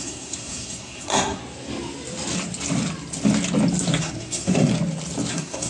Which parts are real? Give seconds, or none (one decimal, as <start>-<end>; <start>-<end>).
1.4-4.0; 4.7-5.3